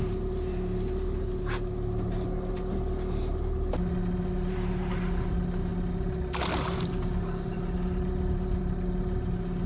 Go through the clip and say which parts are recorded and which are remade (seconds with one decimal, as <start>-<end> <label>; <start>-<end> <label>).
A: 0.0-9.7 recorded

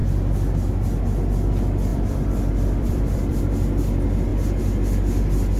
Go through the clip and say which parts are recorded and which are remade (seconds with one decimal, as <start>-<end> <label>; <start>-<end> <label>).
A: 0.0-1.9 recorded; 1.9-3.4 remade; 3.4-5.6 recorded

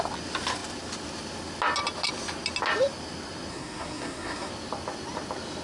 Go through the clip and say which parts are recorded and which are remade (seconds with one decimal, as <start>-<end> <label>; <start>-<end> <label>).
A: 0.0-3.5 recorded; 3.5-4.5 remade; 4.5-5.6 recorded

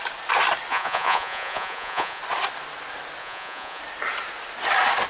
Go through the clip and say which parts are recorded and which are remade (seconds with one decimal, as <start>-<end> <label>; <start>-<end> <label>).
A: 0.0-0.7 recorded; 0.7-2.2 remade; 2.2-3.2 recorded; 3.2-3.8 remade; 3.8-5.1 recorded

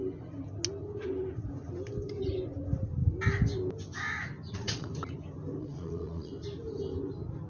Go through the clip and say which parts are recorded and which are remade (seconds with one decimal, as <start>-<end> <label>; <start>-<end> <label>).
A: 0.0-4.5 recorded; 4.5-4.9 remade; 4.9-5.6 recorded; 5.6-6.3 remade; 6.3-7.5 recorded

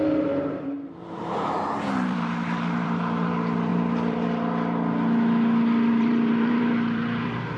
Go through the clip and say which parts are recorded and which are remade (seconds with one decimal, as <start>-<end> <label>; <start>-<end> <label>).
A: 0.0-3.7 remade; 3.7-5.9 recorded; 5.9-7.6 remade

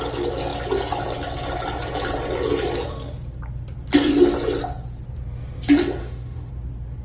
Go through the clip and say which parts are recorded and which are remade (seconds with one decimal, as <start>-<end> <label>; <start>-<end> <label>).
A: 0.0-6.0 recorded; 6.0-6.5 remade; 6.5-7.0 recorded